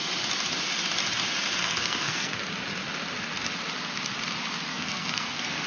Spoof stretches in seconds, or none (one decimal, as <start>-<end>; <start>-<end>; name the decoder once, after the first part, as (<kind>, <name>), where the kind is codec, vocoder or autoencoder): 1.6-2.4 (codec, SNAC); 4.7-5.7